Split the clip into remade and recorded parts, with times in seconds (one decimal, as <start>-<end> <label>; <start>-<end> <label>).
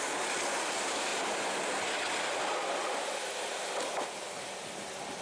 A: 0.0-5.2 recorded